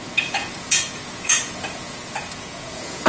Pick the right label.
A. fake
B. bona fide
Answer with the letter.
A